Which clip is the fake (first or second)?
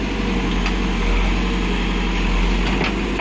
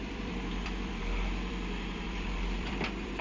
second